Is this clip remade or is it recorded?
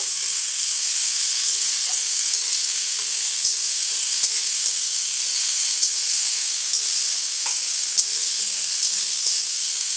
remade